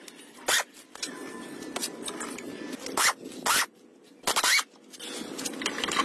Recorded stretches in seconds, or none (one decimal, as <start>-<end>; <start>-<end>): 0.0-6.0